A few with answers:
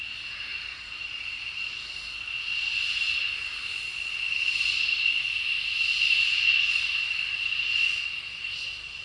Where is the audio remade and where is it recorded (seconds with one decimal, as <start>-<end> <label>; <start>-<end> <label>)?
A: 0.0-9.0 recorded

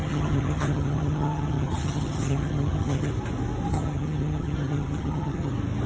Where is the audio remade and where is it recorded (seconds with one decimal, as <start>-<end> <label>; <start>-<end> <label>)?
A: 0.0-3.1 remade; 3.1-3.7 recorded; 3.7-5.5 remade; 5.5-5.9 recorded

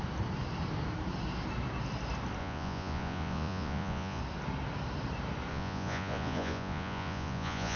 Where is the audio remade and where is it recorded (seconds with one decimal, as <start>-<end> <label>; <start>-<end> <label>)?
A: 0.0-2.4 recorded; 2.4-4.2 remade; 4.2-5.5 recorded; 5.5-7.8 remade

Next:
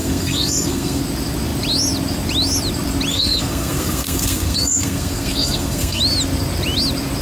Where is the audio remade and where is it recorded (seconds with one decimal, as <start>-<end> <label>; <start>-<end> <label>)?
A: 0.0-1.0 remade; 1.0-3.1 recorded; 3.1-6.0 remade; 6.0-7.2 recorded